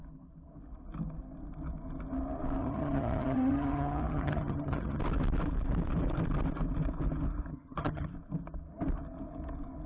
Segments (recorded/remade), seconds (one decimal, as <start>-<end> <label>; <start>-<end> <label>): 0.0-2.6 recorded; 2.6-5.0 remade; 5.0-7.5 recorded; 7.5-8.1 remade; 8.1-9.9 recorded